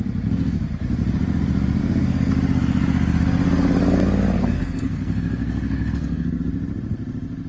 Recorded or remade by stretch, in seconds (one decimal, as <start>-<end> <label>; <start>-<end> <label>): 0.0-1.8 recorded; 1.8-2.3 remade; 2.3-4.4 recorded; 4.4-6.4 remade; 6.4-7.5 recorded